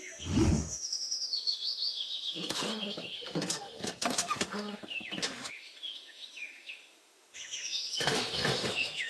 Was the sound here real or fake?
fake